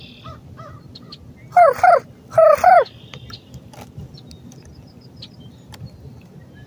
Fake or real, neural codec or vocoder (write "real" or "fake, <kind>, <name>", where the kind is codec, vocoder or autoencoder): real